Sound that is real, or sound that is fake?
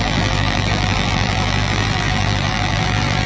fake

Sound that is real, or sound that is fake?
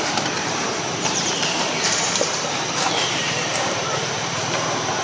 fake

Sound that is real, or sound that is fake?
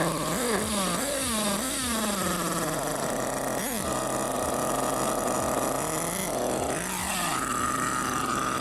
real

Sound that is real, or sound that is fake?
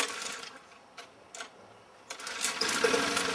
real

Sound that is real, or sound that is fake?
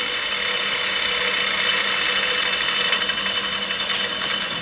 real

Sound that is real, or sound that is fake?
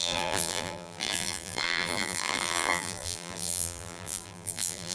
fake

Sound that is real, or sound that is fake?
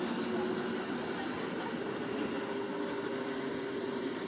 real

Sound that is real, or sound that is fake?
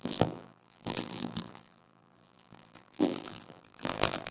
fake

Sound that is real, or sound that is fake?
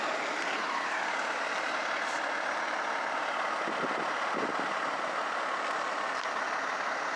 real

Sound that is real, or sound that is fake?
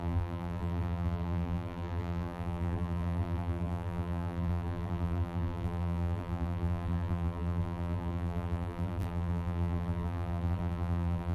fake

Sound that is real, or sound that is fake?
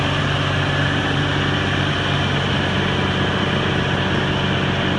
real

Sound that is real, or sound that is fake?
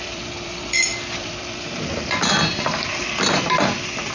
fake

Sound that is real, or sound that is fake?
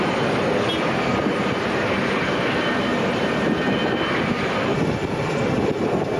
fake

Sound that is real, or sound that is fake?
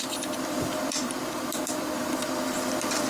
fake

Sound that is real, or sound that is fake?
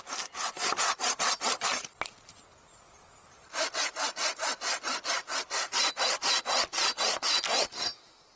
real